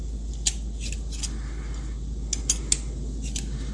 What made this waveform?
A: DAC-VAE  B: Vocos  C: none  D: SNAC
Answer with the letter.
C